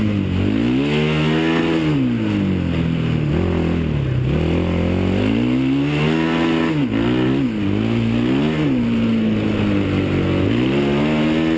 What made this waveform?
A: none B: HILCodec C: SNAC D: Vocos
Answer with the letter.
A